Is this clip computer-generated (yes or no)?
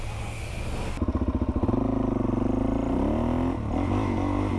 no